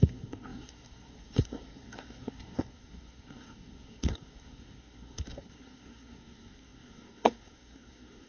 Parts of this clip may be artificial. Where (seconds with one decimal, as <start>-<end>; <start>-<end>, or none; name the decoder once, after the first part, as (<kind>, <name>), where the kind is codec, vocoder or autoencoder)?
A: 0.0-8.3 (codec, SNAC)